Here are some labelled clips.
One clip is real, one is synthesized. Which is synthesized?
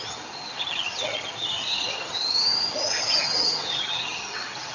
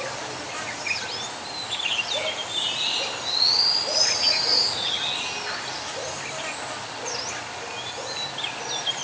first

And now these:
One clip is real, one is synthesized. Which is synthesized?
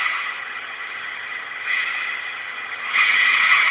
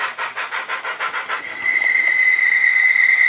first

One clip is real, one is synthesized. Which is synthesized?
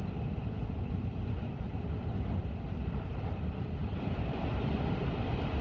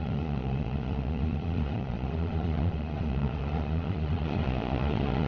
second